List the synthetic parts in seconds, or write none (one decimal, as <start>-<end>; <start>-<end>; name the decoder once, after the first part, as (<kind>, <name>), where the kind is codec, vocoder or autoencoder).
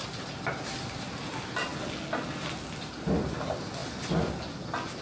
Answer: 0.5-1.7 (vocoder, BigVGAN v2); 3.2-3.8